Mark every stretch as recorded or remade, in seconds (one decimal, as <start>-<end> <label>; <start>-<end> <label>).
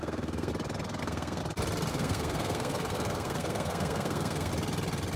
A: 0.0-0.5 remade; 0.5-1.0 recorded; 1.0-1.4 remade; 1.4-1.9 recorded; 1.9-4.5 remade; 4.5-5.2 recorded